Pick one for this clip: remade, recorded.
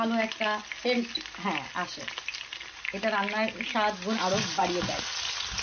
recorded